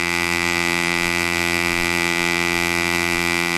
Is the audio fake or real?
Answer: fake